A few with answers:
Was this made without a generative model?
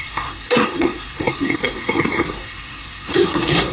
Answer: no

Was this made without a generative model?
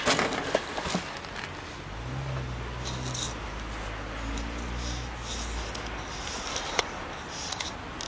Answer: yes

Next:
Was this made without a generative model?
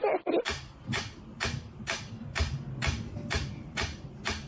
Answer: yes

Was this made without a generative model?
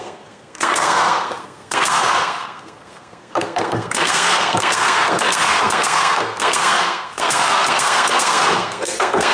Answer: no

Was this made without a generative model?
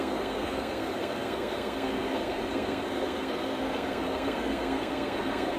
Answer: no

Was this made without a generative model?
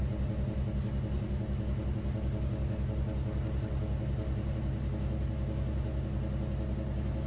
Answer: yes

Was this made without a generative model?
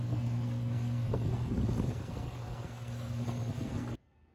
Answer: no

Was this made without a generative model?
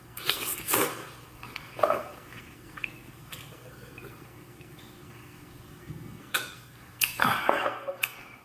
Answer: no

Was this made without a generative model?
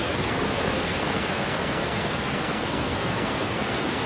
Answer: no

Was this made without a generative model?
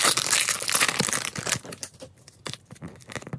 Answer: yes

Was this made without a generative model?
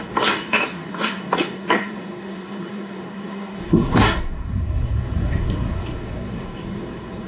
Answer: no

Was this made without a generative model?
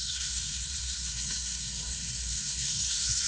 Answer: no